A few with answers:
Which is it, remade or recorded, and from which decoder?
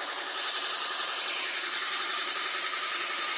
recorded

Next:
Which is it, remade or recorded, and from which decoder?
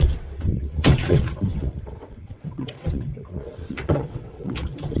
remade, vocoder, WaveNeXt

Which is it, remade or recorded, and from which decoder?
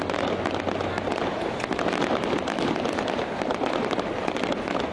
recorded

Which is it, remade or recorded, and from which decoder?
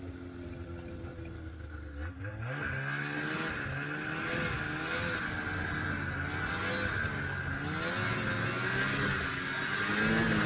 recorded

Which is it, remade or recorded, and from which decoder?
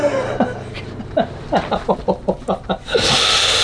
recorded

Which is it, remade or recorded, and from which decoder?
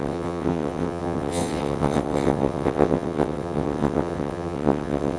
remade, vocoder, WaveNeXt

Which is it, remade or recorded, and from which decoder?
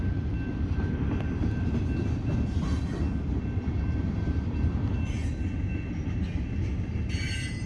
recorded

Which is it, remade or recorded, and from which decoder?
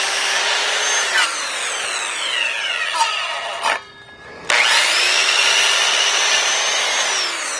recorded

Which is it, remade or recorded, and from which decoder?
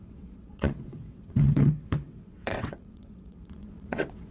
remade, vocoder, WaveNeXt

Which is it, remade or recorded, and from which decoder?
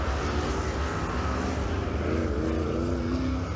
recorded